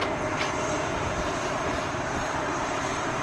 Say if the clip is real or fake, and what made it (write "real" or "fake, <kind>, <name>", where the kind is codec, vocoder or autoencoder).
fake, vocoder, BigVGAN v2